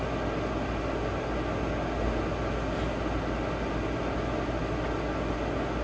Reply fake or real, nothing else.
real